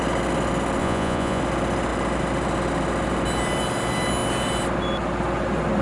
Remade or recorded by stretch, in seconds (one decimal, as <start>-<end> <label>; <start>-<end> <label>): 0.0-0.8 recorded; 0.8-1.4 remade; 1.4-5.8 recorded